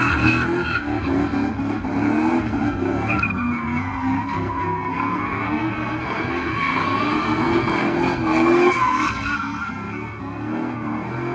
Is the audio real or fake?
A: fake